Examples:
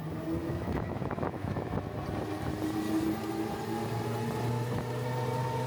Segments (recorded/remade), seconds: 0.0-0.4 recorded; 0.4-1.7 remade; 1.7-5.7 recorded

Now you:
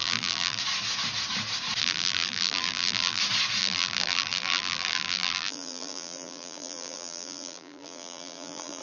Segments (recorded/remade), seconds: 0.0-0.6 remade; 0.6-1.8 recorded; 1.8-3.2 remade; 3.2-3.6 recorded; 3.6-8.8 remade

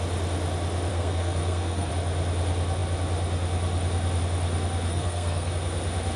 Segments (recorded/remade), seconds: 0.0-0.9 recorded; 0.9-1.9 remade; 1.9-4.9 recorded; 4.9-5.5 remade; 5.5-6.2 recorded

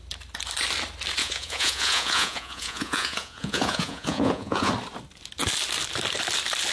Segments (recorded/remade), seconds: 0.0-1.2 recorded; 1.2-4.7 remade; 4.7-6.7 recorded

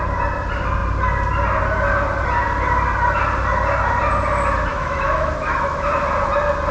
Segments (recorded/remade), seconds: 0.0-4.7 recorded; 4.7-5.9 remade; 5.9-6.7 recorded

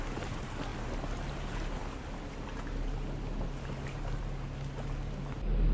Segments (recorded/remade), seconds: 0.0-5.7 recorded